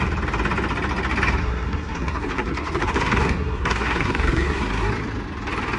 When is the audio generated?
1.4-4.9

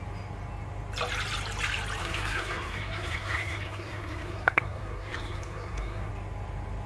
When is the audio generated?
2.0-6.1

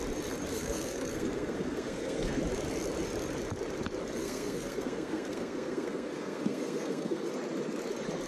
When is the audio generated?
0.5-2.4; 4.2-7.3

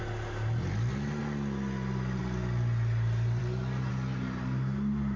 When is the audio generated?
none

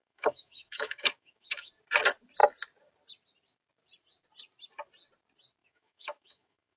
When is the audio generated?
0.0-1.7; 5.6-6.8

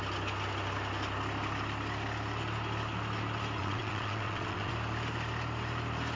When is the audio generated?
3.6-4.7

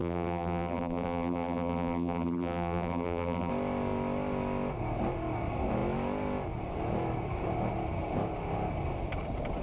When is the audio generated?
0.0-3.5